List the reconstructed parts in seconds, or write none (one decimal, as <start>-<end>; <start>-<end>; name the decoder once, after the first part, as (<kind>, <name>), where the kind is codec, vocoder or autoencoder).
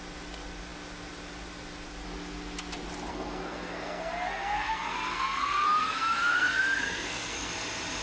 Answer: 3.1-7.5 (codec, SNAC)